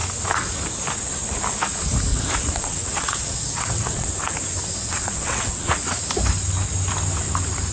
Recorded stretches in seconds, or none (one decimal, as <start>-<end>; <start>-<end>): 0.0-2.1; 4.1-4.8; 6.0-7.7